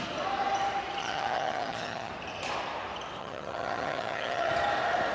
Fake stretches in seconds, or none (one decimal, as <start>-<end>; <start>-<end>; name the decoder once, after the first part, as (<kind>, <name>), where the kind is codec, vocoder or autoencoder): 1.0-2.1 (vocoder, HiFi-GAN); 3.2-4.5